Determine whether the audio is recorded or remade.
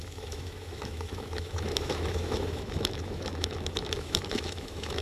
remade